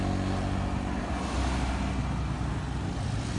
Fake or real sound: real